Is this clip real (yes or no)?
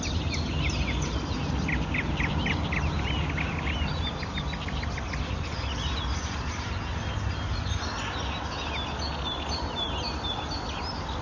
yes